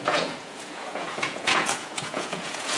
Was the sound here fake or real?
fake